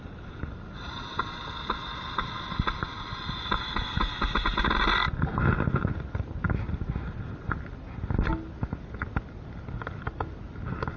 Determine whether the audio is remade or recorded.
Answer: recorded